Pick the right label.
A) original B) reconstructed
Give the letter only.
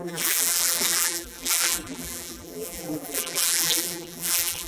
B